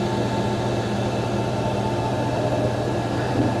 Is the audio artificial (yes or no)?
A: no